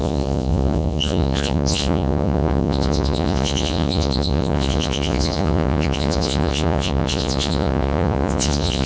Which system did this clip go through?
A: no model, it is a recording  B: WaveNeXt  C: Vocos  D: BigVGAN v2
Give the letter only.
C